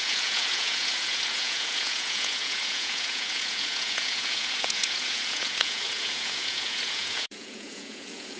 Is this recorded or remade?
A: remade